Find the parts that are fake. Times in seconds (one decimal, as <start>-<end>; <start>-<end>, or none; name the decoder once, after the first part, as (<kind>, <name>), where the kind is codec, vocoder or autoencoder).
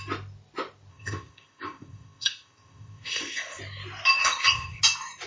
0.9-3.6 (codec, ZipCodec); 4.2-4.8